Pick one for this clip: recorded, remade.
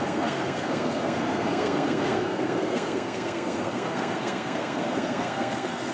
remade